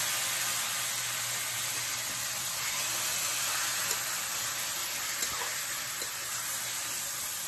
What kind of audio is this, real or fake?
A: real